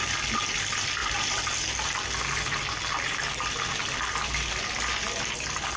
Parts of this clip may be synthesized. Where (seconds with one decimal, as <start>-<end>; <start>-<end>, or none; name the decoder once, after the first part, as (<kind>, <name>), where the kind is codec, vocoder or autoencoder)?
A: none